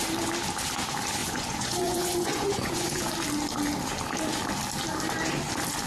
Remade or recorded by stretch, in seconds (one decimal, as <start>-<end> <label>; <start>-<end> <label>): 0.0-1.2 recorded; 1.2-3.0 remade; 3.0-5.9 recorded